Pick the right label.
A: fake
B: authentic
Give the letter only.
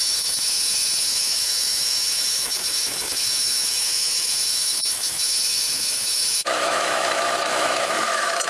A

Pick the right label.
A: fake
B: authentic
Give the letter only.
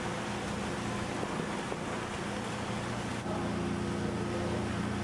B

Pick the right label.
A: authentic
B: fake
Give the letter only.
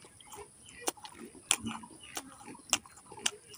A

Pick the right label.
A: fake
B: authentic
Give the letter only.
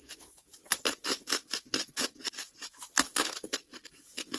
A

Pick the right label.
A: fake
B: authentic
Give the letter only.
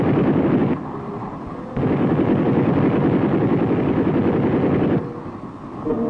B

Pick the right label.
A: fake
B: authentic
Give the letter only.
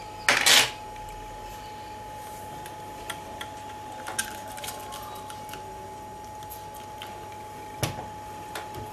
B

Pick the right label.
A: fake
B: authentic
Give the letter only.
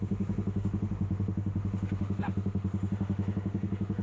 A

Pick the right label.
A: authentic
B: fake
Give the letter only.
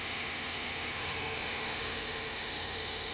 B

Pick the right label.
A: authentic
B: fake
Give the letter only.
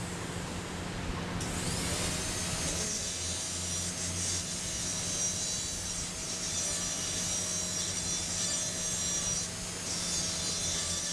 A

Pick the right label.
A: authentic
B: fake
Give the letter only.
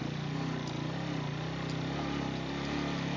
A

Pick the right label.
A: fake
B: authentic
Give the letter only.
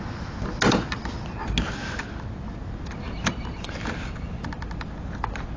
B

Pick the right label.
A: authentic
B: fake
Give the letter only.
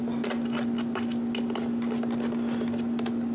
A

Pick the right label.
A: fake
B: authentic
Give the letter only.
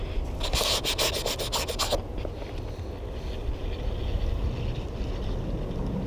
B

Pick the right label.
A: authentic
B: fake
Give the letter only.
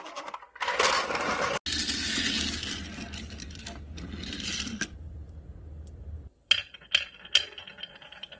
A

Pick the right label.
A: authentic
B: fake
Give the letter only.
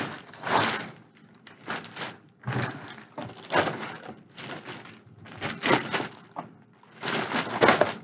A